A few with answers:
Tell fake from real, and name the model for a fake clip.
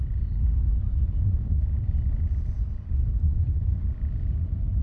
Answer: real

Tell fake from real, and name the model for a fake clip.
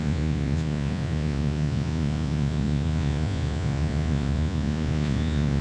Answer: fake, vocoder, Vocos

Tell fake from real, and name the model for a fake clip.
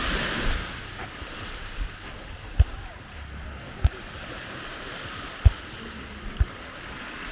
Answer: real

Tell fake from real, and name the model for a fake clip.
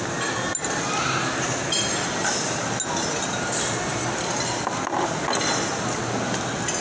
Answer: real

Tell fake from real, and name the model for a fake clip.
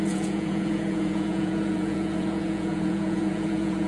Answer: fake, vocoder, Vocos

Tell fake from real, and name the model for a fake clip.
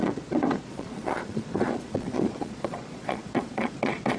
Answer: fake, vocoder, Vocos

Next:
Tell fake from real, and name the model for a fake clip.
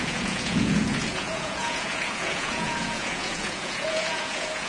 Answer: fake, vocoder, Vocos